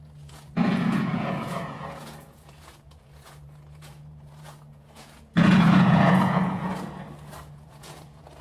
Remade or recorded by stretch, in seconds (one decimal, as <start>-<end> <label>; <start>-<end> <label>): 0.0-6.7 remade; 6.7-7.5 recorded; 7.5-8.4 remade